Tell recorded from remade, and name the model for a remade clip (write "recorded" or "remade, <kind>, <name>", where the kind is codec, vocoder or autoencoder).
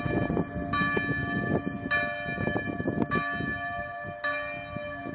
recorded